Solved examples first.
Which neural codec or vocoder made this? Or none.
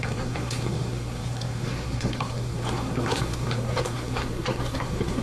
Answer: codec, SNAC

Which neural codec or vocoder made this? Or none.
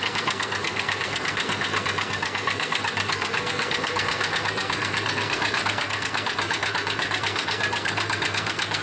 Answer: codec, SNAC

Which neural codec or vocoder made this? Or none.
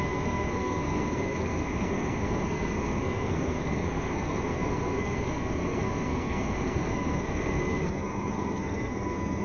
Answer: codec, SNAC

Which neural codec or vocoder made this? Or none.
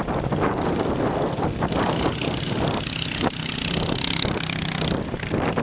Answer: none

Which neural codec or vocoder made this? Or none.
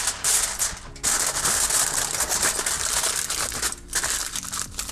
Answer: none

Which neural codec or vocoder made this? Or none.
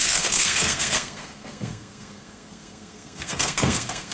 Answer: codec, SNAC